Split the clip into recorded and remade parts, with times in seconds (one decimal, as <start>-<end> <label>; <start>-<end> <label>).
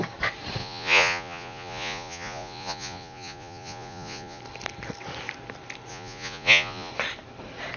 0.0-0.6 recorded; 0.6-4.4 remade; 4.4-5.9 recorded; 5.9-6.9 remade; 6.9-7.8 recorded